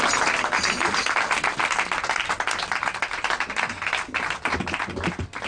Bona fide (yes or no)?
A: yes